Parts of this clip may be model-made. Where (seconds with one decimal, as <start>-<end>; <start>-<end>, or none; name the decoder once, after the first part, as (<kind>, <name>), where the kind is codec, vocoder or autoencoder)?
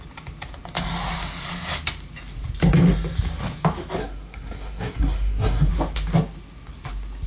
4.0-5.7 (codec, SNAC)